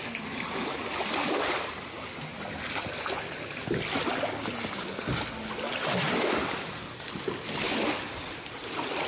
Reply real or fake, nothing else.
real